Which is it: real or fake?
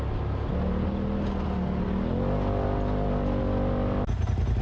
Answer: real